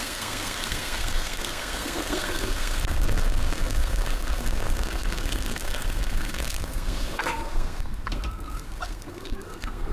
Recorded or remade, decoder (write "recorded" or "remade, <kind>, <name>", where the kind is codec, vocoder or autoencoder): remade, codec, SNAC